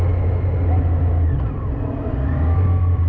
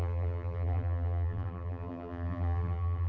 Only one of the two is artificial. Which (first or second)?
second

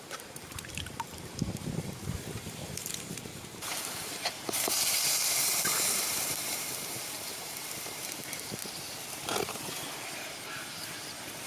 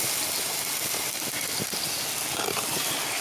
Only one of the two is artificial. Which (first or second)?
first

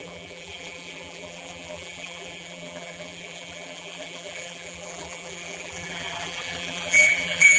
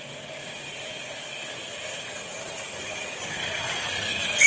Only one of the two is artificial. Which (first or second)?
first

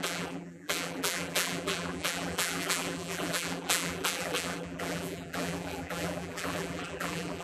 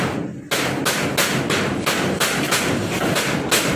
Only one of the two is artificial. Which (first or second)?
first